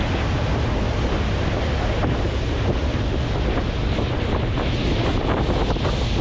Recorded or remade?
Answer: recorded